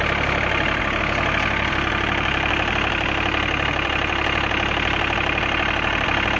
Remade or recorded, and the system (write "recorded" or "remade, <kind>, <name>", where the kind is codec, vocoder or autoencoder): recorded